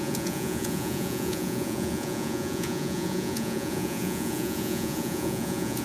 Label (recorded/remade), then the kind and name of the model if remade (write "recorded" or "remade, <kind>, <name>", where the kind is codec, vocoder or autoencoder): remade, vocoder, Vocos